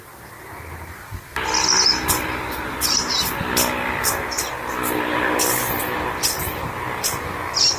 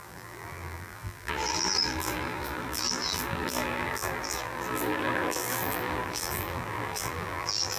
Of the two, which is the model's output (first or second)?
second